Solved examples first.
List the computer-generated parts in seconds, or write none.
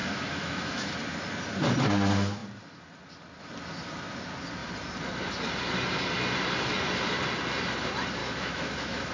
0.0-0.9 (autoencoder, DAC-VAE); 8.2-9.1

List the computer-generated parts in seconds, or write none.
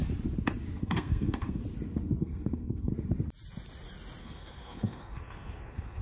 0.8-1.6 (codec, SNAC); 2.2-2.9; 4.2-6.0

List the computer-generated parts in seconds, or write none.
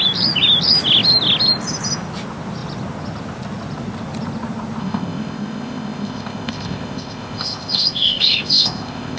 4.8-9.2 (codec, ZipCodec)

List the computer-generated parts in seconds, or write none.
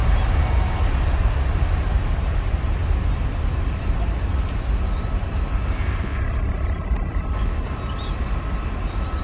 none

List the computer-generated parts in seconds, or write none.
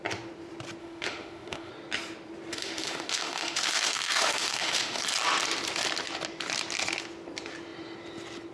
0.8-1.7 (autoencoder, DAC-VAE); 2.5-5.0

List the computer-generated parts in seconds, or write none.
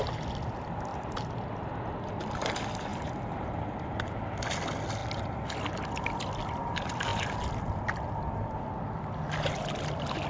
0.9-1.7 (vocoder, BigVGAN v2); 2.9-4.2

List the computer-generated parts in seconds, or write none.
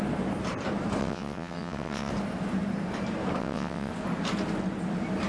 1.0-2.1 (vocoder, WaveNeXt); 3.4-3.9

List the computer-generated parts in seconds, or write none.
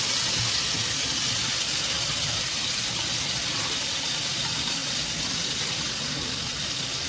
none